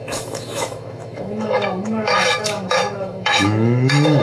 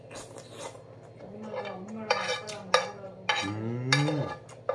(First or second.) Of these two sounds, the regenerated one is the first